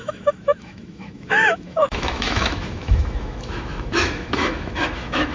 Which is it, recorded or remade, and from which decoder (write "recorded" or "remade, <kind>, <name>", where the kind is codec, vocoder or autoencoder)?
remade, autoencoder, DAC-VAE